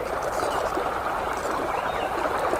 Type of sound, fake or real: fake